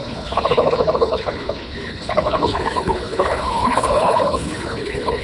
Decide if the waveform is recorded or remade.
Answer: remade